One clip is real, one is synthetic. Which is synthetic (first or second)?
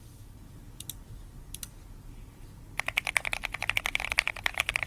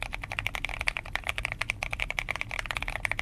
first